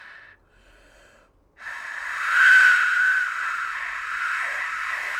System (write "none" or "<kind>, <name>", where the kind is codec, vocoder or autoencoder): none